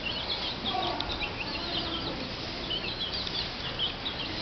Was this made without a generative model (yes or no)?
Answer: yes